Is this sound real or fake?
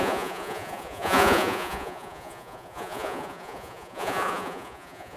fake